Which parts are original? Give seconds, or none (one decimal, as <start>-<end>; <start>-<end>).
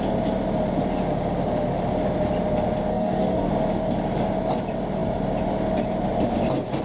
0.0-2.9; 3.5-6.8